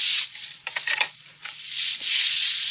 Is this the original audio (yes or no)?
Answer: no